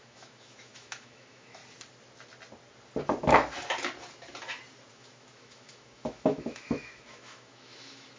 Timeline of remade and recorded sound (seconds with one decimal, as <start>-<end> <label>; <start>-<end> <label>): 0.0-1.6 remade; 1.6-4.9 recorded; 4.9-8.2 remade